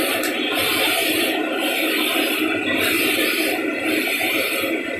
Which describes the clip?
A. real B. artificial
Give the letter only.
B